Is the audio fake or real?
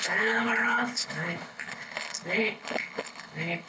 fake